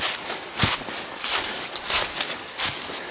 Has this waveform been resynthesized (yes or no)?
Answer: no